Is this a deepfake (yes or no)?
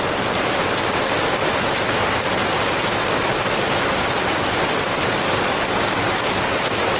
no